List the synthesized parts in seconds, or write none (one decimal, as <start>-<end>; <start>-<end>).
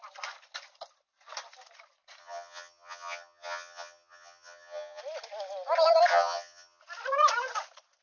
2.2-5.0; 6.1-6.8